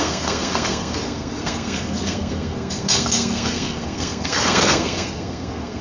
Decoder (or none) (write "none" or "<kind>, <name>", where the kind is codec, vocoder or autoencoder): codec, SNAC